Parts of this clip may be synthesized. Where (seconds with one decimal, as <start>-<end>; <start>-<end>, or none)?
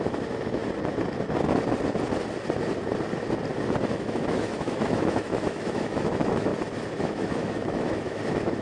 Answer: 0.0-0.6; 3.9-6.5; 7.0-8.6